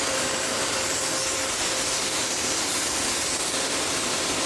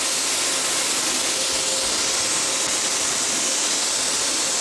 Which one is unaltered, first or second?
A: second